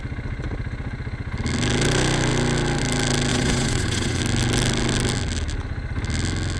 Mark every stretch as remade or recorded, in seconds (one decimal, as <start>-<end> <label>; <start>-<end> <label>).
0.0-3.3 recorded; 3.3-4.2 remade; 4.2-6.6 recorded